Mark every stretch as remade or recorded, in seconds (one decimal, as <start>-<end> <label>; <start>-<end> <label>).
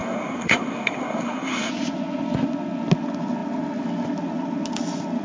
0.0-1.7 remade; 1.7-5.2 recorded